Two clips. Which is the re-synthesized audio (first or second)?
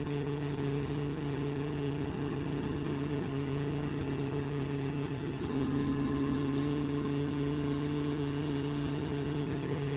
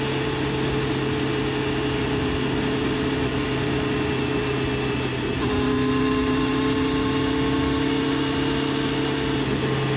first